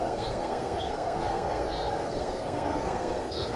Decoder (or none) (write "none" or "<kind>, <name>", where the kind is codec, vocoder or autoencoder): codec, SNAC